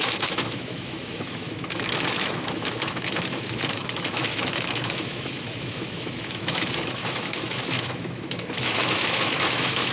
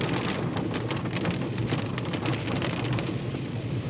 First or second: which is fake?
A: first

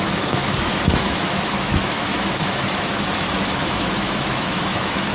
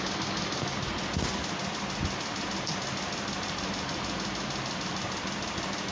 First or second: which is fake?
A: first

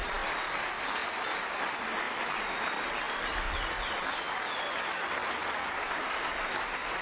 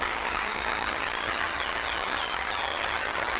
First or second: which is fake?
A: second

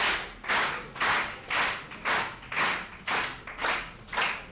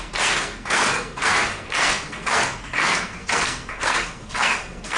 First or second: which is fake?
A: second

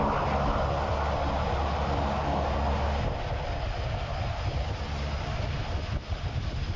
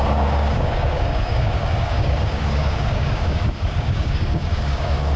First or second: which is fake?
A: second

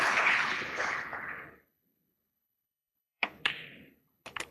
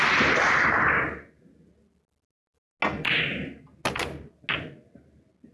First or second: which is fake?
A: first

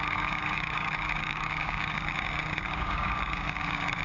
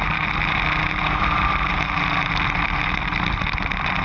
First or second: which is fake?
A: first